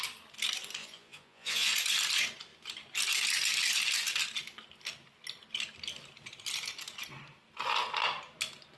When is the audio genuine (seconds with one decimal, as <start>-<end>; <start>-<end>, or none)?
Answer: 0.0-0.8; 1.7-8.8